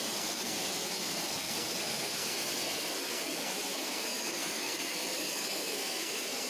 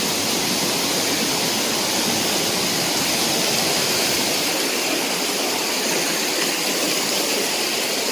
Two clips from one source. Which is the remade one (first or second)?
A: first